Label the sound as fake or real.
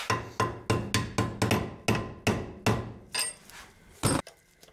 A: real